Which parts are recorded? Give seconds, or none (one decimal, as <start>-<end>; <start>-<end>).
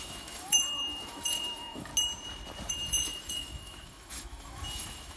1.9-2.7